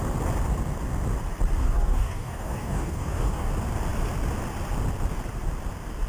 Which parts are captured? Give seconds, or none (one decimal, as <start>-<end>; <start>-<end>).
0.0-1.6; 3.5-6.1